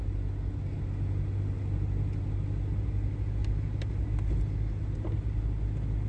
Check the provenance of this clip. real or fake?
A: real